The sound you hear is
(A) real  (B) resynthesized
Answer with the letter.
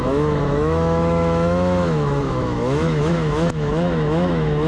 B